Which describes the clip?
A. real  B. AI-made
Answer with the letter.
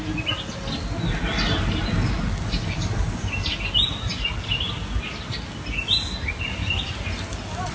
A